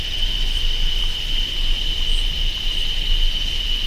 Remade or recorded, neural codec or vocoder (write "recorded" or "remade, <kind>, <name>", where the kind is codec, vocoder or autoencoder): recorded